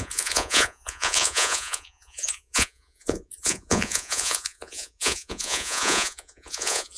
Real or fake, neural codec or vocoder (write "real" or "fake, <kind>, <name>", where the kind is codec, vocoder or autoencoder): fake, vocoder, Vocos